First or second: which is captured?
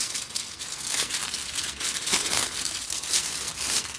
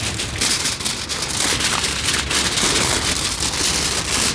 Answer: second